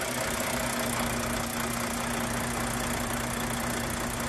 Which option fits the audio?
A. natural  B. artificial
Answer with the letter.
A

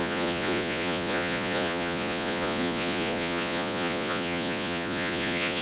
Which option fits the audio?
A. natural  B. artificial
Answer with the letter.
B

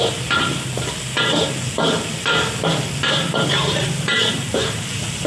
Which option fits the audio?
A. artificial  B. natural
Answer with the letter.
B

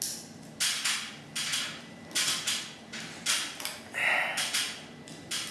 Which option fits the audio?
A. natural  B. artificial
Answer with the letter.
A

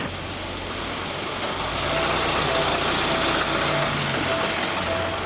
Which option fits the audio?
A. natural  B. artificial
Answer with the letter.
A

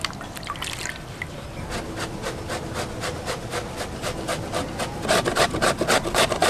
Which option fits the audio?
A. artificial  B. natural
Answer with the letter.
B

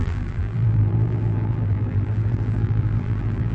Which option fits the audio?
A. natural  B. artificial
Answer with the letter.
B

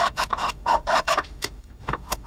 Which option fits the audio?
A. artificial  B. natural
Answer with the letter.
A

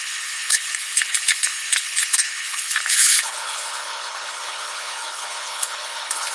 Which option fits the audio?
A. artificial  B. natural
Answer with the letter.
A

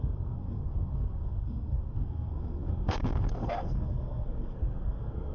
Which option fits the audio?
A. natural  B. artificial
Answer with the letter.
B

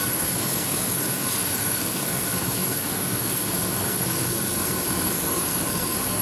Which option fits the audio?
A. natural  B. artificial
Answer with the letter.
B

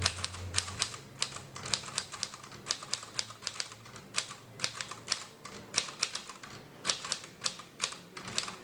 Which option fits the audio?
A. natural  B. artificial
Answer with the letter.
B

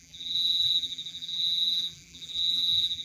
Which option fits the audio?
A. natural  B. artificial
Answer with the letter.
B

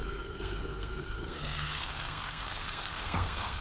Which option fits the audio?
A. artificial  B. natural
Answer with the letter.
A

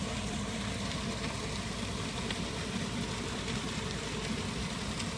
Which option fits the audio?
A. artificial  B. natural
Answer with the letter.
A